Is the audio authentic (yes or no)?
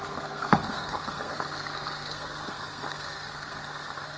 no